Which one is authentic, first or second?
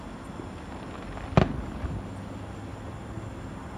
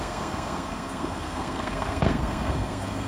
first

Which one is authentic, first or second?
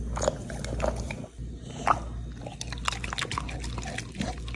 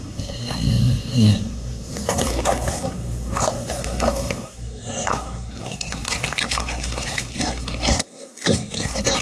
first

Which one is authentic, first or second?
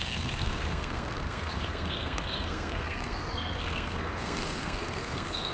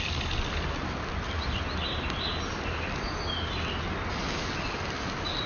second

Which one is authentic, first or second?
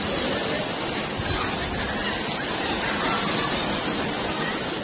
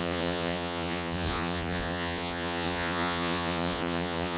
first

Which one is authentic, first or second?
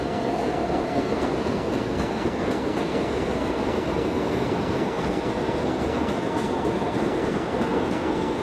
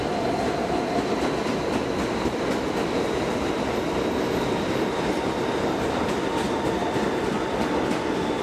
second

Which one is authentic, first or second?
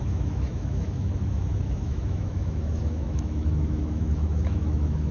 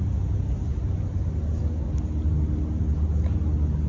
second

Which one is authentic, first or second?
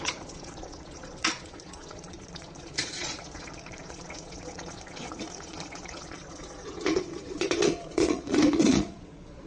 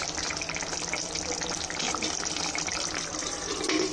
second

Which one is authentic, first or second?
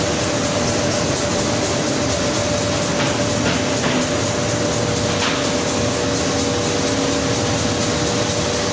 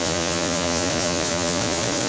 first